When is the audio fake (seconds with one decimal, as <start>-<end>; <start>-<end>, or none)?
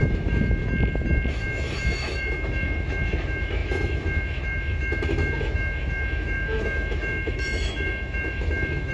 0.0-0.6; 1.3-8.9